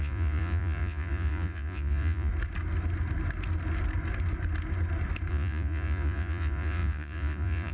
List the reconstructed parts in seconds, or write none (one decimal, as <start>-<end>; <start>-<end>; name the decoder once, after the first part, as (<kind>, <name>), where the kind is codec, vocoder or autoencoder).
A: 0.0-2.3 (vocoder, Vocos); 5.3-7.7